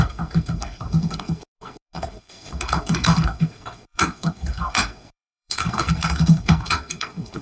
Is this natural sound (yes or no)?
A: no